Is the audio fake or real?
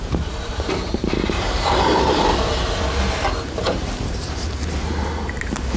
fake